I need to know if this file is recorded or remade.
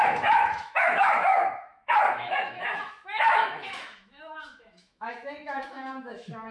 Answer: remade